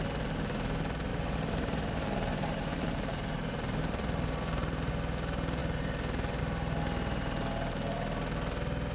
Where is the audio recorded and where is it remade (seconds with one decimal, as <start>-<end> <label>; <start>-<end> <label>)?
0.0-1.1 recorded; 1.1-4.9 remade; 4.9-5.6 recorded; 5.6-6.4 remade; 6.4-8.9 recorded